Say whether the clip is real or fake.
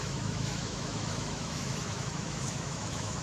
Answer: fake